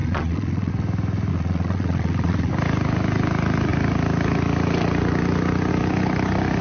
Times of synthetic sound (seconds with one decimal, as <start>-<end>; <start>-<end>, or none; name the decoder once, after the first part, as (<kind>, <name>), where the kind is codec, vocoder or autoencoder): 0.0-0.7 (vocoder, Vocos); 1.3-2.5